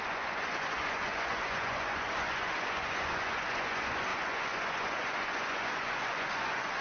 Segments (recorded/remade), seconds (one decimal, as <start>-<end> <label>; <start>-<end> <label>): 0.0-6.8 remade